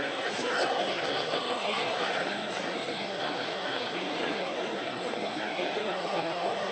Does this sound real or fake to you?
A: fake